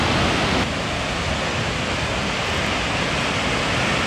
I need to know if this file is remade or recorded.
recorded